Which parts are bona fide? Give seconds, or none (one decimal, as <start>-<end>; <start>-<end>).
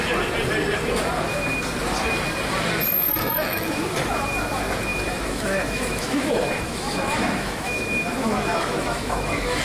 0.0-3.1; 3.8-4.9